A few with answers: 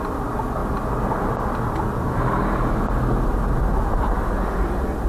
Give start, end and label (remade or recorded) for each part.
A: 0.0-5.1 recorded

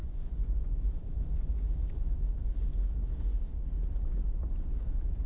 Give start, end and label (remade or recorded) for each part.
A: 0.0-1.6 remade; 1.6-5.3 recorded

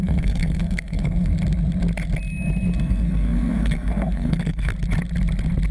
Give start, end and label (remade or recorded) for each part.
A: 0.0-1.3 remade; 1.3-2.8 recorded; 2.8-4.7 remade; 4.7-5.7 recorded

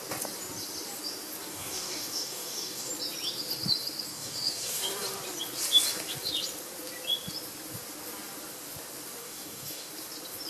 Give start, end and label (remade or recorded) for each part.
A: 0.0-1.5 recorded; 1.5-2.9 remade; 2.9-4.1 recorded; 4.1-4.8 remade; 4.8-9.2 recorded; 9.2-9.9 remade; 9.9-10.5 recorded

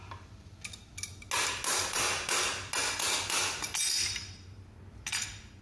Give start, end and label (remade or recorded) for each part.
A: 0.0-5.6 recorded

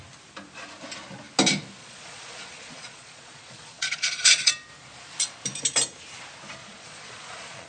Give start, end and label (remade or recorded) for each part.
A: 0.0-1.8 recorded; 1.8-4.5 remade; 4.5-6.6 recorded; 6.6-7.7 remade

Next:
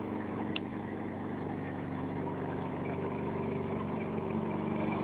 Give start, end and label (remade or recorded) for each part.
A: 0.0-5.0 remade